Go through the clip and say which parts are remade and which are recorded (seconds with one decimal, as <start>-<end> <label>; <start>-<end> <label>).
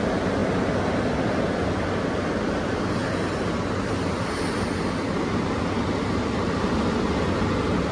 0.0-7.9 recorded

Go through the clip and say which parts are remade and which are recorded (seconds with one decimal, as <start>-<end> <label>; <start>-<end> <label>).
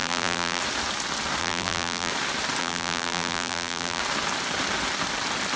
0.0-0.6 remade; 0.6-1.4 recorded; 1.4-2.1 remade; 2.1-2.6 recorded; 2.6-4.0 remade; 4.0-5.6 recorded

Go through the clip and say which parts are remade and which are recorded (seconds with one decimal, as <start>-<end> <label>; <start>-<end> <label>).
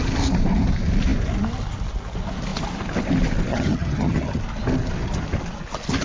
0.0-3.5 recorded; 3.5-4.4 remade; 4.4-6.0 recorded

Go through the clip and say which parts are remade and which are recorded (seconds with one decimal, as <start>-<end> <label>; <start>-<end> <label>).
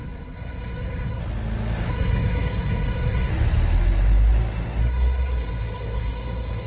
0.0-1.2 remade; 1.2-1.9 recorded; 1.9-3.3 remade; 3.3-4.8 recorded; 4.8-6.7 remade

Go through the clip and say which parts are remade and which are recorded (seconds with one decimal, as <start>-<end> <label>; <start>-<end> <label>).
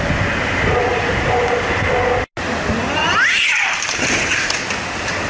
0.0-0.9 recorded; 0.9-1.9 remade; 1.9-3.0 recorded; 3.0-4.5 remade; 4.5-5.3 recorded